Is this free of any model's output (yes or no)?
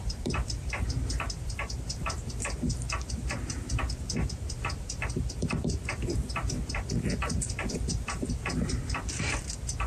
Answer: no